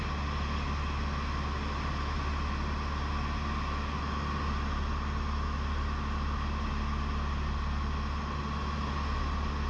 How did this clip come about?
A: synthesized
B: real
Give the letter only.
B